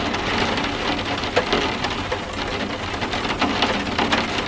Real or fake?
real